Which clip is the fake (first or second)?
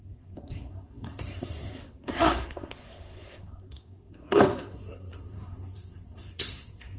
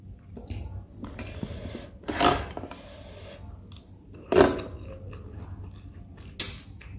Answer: first